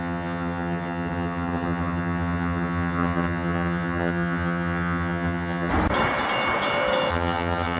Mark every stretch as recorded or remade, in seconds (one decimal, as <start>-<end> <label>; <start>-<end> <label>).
0.0-5.7 remade; 5.7-7.1 recorded; 7.1-7.8 remade